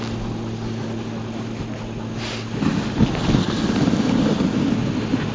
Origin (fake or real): real